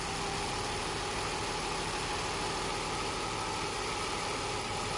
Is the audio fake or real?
real